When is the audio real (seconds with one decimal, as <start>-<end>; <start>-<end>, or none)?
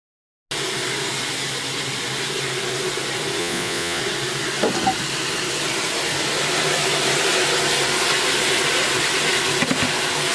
0.0-3.4; 4.0-10.3